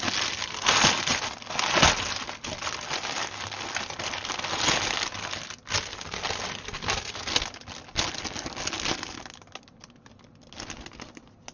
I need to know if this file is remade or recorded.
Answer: recorded